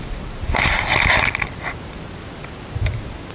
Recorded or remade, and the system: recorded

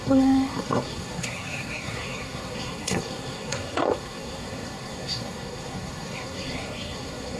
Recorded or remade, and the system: remade, codec, SNAC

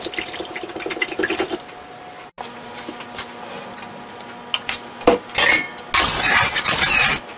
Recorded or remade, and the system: recorded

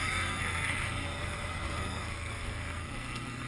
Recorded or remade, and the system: remade, codec, SNAC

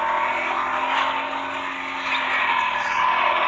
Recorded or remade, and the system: recorded